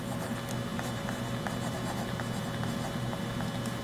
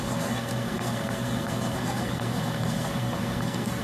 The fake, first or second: second